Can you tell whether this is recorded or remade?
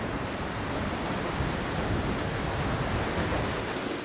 recorded